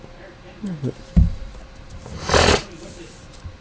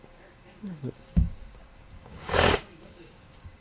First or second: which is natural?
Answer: first